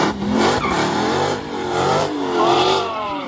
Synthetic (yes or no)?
yes